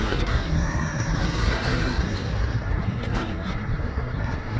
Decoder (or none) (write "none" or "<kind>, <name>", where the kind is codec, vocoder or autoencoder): codec, SNAC